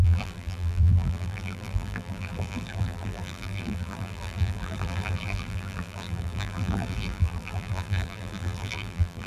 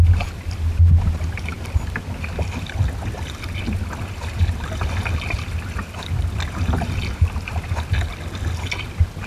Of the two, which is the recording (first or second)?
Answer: second